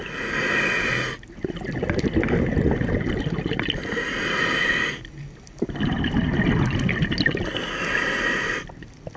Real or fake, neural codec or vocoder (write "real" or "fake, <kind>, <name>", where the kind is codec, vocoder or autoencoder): real